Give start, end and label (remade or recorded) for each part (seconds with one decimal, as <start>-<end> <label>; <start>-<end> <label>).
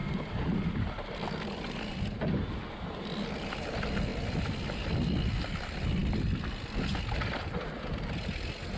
0.0-8.8 recorded